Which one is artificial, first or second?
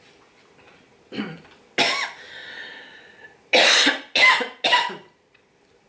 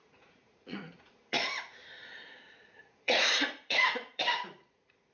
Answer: second